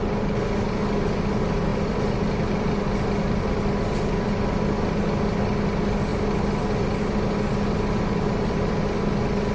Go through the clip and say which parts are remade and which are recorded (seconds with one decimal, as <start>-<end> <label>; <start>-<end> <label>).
0.0-9.5 recorded